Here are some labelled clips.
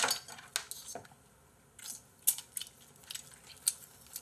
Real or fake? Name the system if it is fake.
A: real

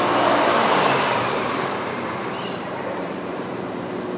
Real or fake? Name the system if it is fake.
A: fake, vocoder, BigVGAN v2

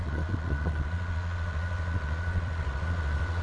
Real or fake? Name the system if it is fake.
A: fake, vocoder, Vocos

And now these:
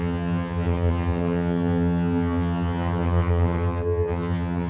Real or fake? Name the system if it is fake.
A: fake, vocoder, HiFi-GAN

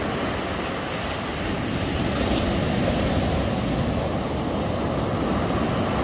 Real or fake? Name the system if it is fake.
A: real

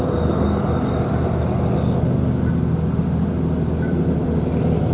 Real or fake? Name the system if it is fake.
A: real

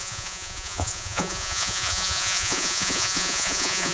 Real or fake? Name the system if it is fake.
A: fake, vocoder, Vocos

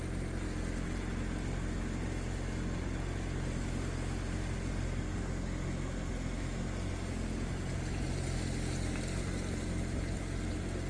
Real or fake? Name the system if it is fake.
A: real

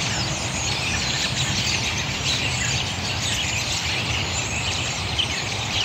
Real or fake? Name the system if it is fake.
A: fake, vocoder, BigVGAN v2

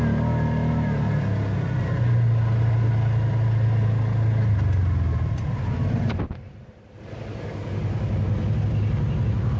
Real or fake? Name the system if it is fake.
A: real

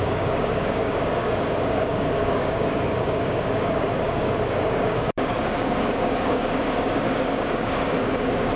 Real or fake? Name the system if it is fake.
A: fake, codec, DAC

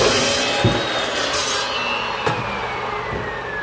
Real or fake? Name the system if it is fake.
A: real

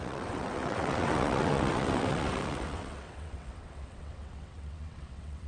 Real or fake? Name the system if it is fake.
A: fake, vocoder, WaveNeXt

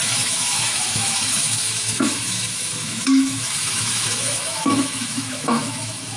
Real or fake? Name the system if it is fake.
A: fake, autoencoder, DAC-VAE